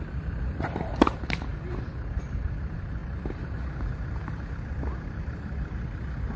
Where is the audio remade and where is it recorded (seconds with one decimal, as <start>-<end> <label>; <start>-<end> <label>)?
0.0-1.5 remade; 1.5-2.2 recorded; 2.2-3.0 remade; 3.0-4.7 recorded; 4.7-6.4 remade